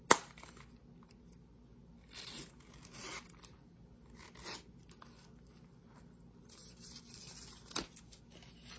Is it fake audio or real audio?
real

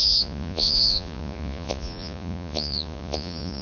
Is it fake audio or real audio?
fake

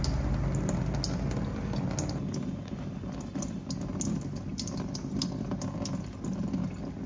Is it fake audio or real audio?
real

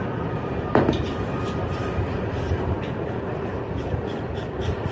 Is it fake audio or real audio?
real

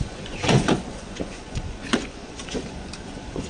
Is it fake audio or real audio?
fake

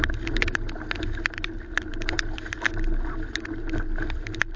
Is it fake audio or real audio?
real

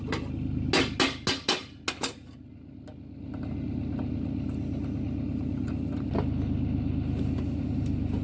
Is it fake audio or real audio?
real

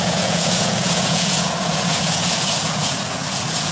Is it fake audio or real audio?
fake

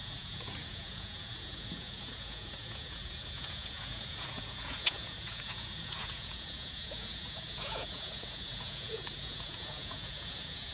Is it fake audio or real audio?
fake